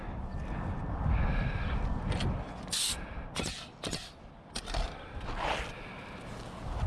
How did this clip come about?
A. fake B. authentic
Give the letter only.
B